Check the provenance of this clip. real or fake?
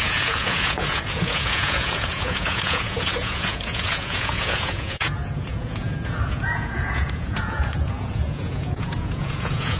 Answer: fake